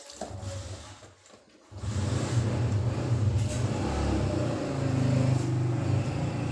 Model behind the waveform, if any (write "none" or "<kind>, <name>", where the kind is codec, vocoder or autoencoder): none